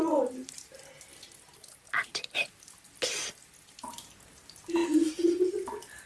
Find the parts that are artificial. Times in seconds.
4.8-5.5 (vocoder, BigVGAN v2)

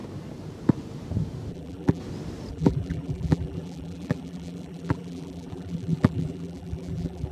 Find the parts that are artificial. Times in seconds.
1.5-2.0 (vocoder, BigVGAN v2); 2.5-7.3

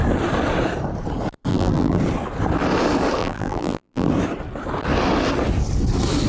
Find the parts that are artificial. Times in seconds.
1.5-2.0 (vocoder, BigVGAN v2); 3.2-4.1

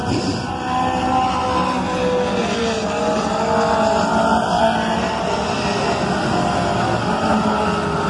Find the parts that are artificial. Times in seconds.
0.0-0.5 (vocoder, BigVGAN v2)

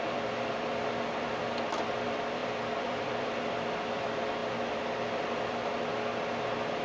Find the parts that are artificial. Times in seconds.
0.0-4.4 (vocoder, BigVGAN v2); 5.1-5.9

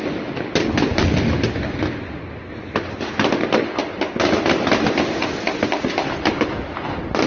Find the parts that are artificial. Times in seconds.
2.5-4.0 (vocoder, BigVGAN v2)